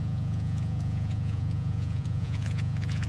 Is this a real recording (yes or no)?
no